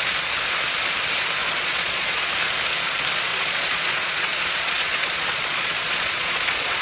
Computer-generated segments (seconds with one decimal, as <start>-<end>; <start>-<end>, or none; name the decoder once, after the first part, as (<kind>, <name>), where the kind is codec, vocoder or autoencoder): 1.4-2.3 (vocoder, Vocos); 3.3-6.8